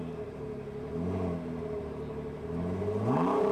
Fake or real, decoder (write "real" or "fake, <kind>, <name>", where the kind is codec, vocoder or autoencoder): real